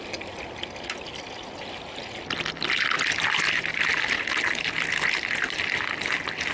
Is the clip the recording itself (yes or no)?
yes